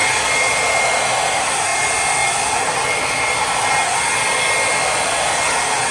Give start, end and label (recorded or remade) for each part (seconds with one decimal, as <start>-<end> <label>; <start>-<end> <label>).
0.0-5.9 recorded